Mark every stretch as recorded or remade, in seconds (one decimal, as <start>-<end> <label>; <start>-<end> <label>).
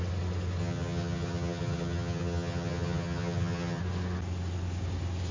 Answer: 0.0-0.6 recorded; 0.6-3.8 remade; 3.8-5.3 recorded